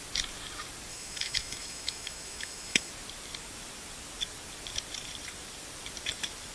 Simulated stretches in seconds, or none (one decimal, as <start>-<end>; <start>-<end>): 0.9-2.9